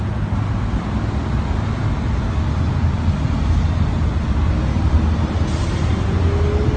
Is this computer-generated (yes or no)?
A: no